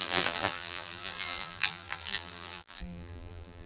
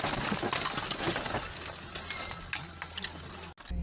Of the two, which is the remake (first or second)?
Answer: first